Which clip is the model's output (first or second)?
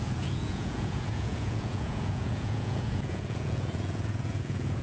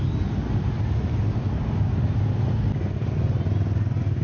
first